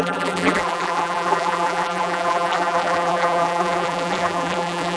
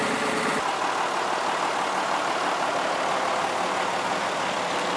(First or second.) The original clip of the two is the second